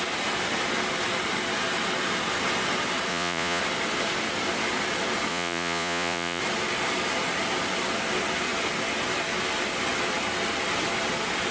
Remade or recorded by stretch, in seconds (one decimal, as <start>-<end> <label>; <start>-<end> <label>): 0.0-3.1 recorded; 3.1-3.6 remade; 3.6-5.3 recorded; 5.3-6.4 remade; 6.4-11.5 recorded